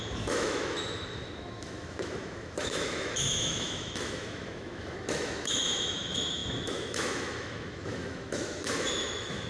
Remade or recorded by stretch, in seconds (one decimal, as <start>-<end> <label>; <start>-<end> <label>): 0.0-9.5 remade